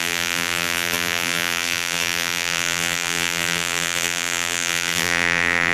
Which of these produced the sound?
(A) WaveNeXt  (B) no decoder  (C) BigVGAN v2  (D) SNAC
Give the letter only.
C